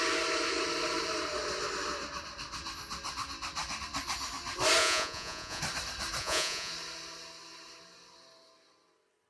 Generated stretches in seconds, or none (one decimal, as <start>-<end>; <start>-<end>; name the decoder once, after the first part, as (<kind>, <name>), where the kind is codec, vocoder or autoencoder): 4.8-5.6 (vocoder, Vocos); 6.2-6.7